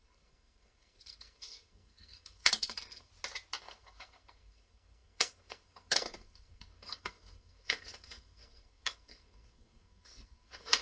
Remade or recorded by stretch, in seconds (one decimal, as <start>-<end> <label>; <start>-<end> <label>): 0.0-3.1 remade; 3.1-3.6 recorded; 3.6-10.8 remade